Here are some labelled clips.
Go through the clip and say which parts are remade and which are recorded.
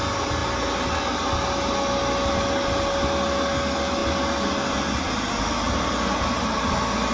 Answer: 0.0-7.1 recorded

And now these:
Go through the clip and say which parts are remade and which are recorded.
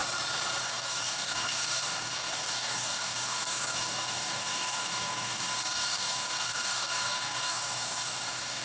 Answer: 0.0-0.6 recorded; 0.6-8.6 remade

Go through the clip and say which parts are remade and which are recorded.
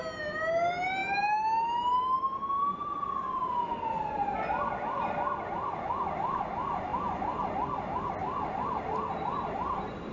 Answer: 0.0-10.1 recorded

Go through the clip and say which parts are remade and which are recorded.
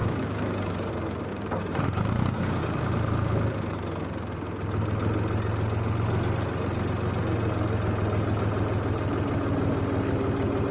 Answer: 0.0-0.9 remade; 0.9-1.3 recorded; 1.3-2.8 remade; 2.8-10.7 recorded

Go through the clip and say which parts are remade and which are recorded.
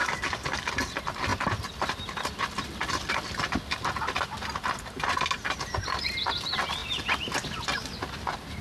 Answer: 0.0-0.7 remade; 0.7-8.6 recorded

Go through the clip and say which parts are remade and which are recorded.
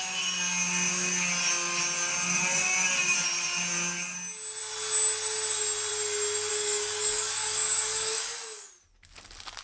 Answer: 0.0-6.5 recorded; 6.5-8.7 remade; 8.7-9.6 recorded